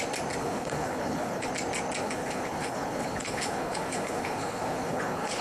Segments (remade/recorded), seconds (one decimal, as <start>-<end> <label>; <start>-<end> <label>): 0.0-0.4 recorded; 0.4-1.5 remade; 1.5-2.0 recorded; 2.0-5.4 remade